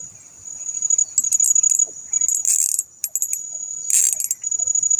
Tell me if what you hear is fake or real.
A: real